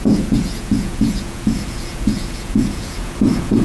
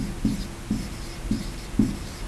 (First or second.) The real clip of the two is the second